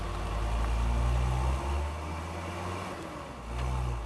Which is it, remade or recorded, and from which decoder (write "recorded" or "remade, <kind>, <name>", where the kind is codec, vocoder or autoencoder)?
recorded